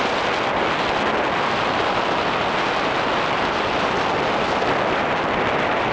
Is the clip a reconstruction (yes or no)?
no